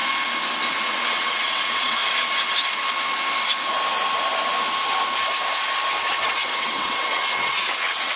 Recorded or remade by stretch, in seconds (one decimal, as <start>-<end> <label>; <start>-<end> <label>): 0.0-0.7 recorded; 0.7-2.0 remade; 2.0-6.1 recorded; 6.1-8.2 remade